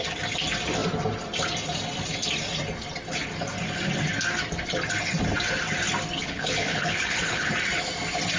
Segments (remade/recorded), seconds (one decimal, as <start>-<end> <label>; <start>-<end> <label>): 0.0-6.2 recorded; 6.2-7.5 remade; 7.5-8.4 recorded